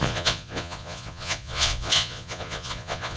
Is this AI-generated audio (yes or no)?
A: yes